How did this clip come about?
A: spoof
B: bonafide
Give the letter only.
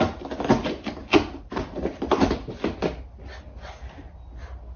B